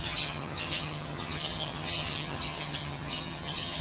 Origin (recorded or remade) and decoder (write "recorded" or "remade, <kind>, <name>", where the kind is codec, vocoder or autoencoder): remade, vocoder, HiFi-GAN